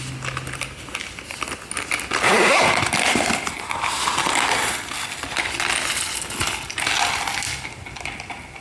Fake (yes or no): no